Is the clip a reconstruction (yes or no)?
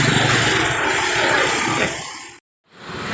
no